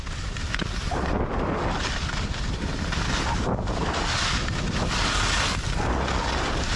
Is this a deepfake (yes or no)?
no